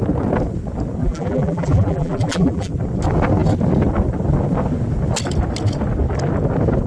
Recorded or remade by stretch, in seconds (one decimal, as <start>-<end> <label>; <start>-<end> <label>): 0.0-1.0 recorded; 1.0-2.7 remade; 2.7-6.9 recorded